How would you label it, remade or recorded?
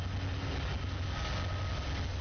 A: recorded